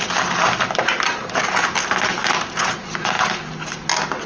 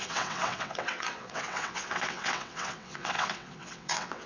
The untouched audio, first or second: first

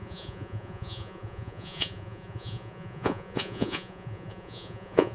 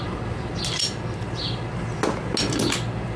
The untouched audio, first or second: second